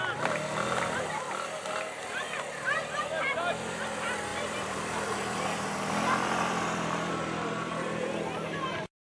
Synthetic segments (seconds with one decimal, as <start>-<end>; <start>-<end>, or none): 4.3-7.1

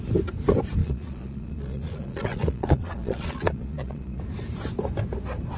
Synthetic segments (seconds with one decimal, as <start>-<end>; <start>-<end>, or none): 0.8-4.2

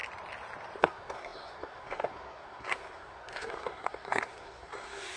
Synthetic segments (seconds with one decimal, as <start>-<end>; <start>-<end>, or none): 0.8-5.2

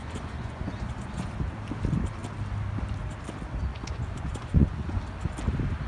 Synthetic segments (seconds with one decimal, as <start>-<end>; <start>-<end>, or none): 0.0-1.3; 3.7-5.0

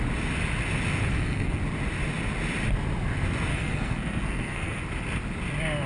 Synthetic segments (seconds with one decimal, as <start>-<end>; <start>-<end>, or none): 1.1-1.6; 3.5-4.8